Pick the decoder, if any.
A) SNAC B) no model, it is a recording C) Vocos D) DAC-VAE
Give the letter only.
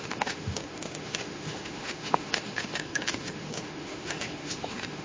D